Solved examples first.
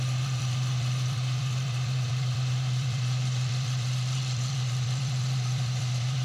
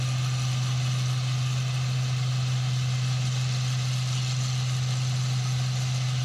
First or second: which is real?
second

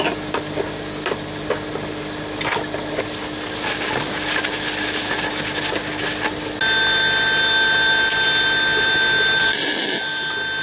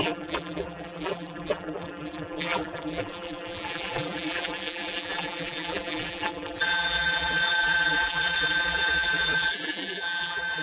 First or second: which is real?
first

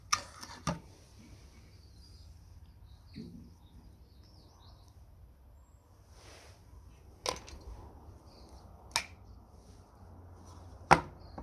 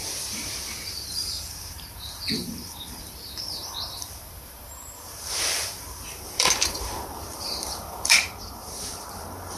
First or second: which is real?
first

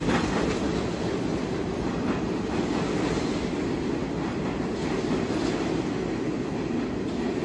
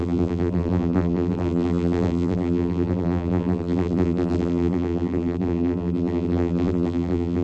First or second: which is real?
first